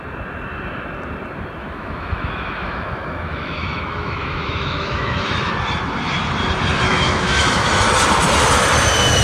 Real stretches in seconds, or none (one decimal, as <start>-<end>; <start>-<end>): 0.0-1.6; 5.5-6.9; 7.7-9.2